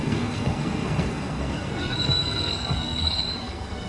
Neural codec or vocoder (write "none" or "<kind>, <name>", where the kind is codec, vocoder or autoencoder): codec, SNAC